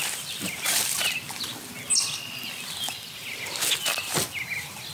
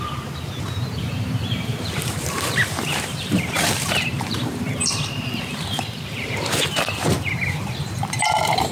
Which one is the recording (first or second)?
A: first